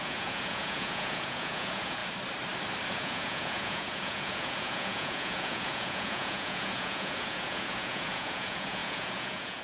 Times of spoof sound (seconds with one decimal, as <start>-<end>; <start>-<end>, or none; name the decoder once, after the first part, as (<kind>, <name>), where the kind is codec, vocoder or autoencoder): 0.0-2.0 (vocoder, Vocos); 2.9-9.6